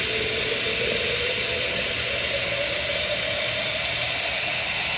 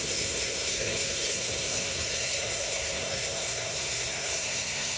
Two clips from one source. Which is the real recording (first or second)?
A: first